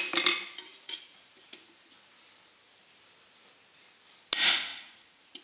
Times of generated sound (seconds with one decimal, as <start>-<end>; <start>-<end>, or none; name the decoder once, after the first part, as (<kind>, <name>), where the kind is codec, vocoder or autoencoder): 0.7-1.3 (vocoder, Vocos); 4.7-5.4